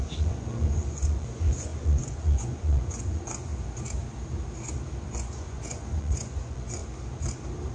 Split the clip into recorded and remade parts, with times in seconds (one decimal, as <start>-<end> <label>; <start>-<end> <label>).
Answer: 0.0-3.5 remade; 3.5-5.1 recorded; 5.1-6.8 remade; 6.8-7.7 recorded